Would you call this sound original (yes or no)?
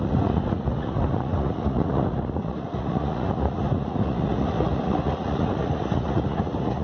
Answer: no